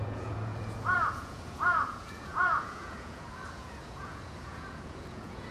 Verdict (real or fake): fake